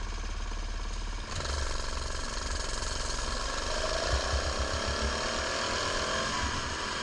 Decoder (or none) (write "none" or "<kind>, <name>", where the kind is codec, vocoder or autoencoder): none